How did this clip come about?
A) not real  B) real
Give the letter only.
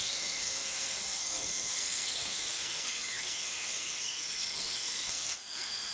A